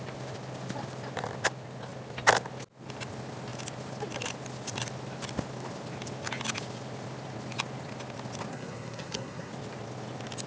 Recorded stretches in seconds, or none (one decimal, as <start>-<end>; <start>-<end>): 0.0-8.5; 9.5-10.5